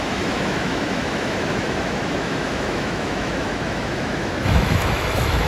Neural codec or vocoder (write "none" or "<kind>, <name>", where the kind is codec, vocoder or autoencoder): autoencoder, DAC-VAE